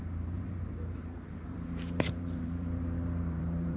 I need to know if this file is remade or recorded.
remade